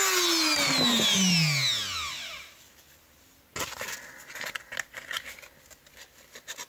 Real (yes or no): yes